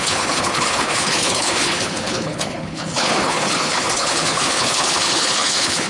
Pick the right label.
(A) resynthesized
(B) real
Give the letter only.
A